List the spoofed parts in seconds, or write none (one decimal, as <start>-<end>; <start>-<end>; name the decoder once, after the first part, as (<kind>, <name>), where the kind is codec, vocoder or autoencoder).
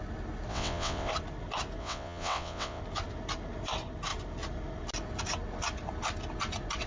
0.5-1.1 (vocoder, WaveNeXt); 1.8-2.8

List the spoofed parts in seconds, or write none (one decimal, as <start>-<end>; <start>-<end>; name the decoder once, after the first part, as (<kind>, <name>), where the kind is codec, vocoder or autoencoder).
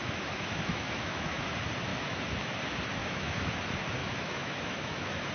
0.0-1.5 (autoencoder, DAC-VAE); 1.9-2.6; 3.0-3.5; 4.0-5.3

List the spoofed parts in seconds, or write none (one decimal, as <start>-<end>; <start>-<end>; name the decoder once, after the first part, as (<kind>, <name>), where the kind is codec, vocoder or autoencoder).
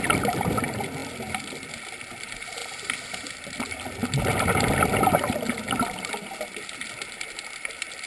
0.0-8.1 (vocoder, BigVGAN v2)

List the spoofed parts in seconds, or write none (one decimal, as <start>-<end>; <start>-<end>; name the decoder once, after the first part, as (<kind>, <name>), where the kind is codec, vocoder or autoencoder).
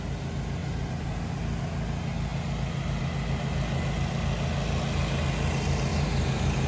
0.6-1.2 (vocoder, BigVGAN v2); 5.9-6.7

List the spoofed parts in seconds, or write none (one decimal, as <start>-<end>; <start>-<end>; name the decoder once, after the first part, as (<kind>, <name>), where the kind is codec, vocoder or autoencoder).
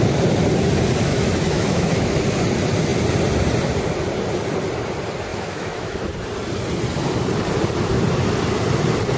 1.1-2.2 (autoencoder, DAC-VAE); 5.3-6.0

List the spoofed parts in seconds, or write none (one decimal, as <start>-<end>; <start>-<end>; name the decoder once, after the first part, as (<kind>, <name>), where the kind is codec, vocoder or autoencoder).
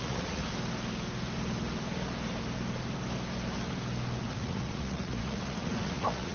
0.0-0.4 (vocoder, Vocos); 4.2-6.3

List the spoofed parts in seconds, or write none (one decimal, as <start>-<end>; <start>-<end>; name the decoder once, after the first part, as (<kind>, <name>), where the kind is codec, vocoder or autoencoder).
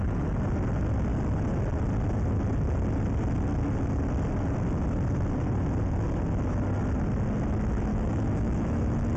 7.9-9.2 (autoencoder, DAC-VAE)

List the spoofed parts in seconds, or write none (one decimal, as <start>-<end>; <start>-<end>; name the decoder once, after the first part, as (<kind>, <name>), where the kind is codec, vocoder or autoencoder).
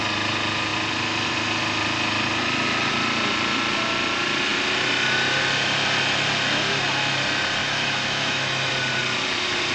7.6-8.7 (autoencoder, DAC-VAE)